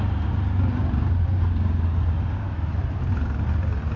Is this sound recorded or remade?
recorded